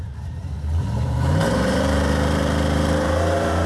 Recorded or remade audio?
remade